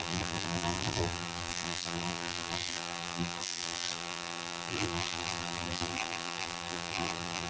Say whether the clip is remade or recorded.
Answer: remade